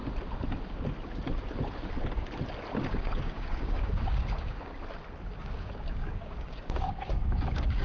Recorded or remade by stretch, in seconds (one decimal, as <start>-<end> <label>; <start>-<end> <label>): 0.0-2.9 recorded; 2.9-4.7 remade; 4.7-5.4 recorded; 5.4-7.8 remade